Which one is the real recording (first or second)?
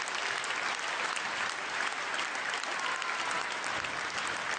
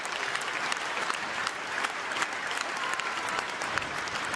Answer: first